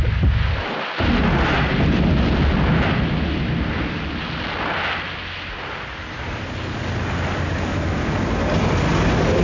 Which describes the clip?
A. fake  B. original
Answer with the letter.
B